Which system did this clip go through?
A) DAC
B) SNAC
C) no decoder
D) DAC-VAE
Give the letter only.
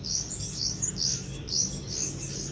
A